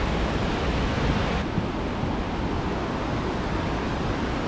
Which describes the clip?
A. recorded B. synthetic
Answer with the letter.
A